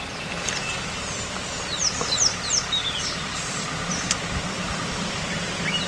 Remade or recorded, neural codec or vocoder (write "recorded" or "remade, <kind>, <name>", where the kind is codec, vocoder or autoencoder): remade, vocoder, BigVGAN v2